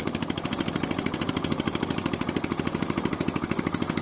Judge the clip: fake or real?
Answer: real